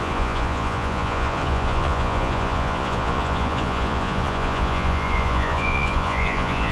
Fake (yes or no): yes